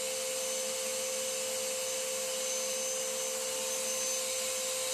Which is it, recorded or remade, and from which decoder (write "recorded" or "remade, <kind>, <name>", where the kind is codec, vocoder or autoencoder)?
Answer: recorded